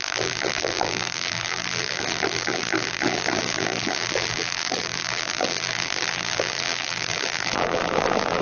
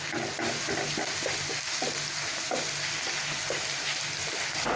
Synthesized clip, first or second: first